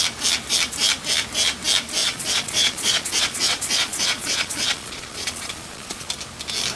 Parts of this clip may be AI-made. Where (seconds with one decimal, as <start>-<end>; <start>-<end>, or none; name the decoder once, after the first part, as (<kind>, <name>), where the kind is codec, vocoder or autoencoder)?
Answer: 2.0-6.1 (vocoder, Vocos)